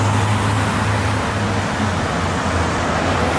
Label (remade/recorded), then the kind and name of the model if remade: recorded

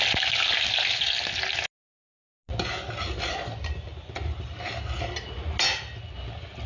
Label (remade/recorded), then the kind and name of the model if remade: recorded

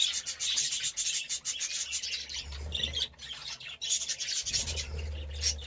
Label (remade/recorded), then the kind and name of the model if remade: recorded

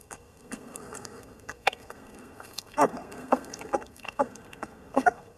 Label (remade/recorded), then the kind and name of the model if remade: remade, codec, SNAC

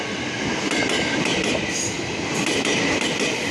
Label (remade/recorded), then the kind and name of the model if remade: recorded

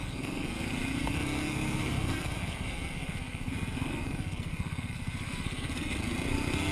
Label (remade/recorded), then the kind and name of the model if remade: remade, codec, SNAC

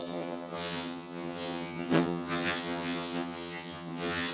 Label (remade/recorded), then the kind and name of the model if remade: remade, vocoder, HiFi-GAN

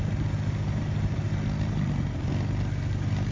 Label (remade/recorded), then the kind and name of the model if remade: recorded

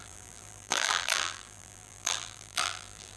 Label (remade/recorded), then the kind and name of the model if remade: remade, vocoder, BigVGAN v2